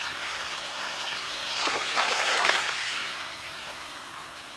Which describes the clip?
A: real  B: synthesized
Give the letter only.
B